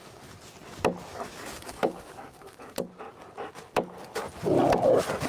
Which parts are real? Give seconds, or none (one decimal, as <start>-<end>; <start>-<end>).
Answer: 0.0-1.1; 2.9-5.3